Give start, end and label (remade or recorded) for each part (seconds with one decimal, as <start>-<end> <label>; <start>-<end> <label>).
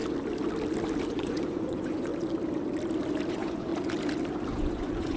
0.0-1.1 recorded; 1.1-2.1 remade; 2.1-3.3 recorded; 3.3-3.7 remade; 3.7-4.5 recorded; 4.5-5.2 remade